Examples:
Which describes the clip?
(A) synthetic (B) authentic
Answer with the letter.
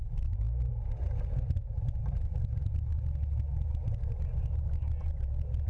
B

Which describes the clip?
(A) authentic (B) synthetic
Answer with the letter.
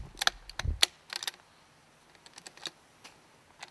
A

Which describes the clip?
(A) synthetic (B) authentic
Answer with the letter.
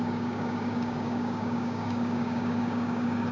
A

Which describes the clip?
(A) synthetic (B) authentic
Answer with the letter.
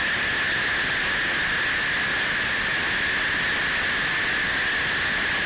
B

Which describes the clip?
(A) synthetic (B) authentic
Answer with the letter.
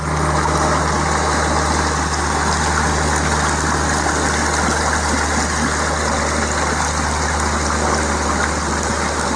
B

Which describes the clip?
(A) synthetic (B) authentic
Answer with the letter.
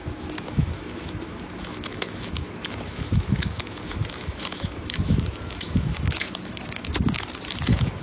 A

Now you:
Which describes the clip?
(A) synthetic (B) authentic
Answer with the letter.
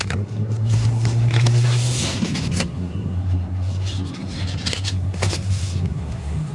A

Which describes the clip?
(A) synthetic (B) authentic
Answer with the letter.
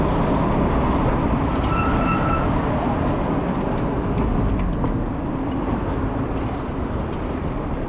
B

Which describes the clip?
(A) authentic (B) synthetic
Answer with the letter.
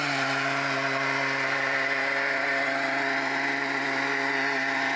A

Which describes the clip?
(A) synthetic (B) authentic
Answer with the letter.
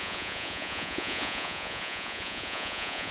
A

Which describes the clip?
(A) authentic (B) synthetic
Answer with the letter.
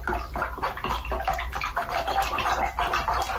A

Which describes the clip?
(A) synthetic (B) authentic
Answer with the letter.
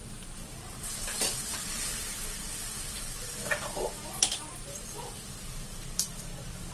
A